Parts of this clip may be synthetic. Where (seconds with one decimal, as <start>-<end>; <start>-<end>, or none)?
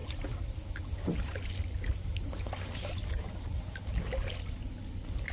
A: none